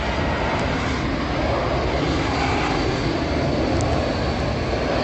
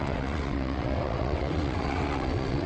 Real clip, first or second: first